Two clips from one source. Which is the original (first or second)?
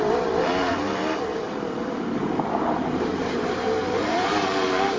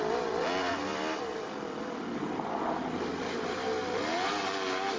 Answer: second